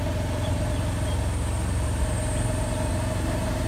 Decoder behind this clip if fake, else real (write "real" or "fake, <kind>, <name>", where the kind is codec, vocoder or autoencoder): real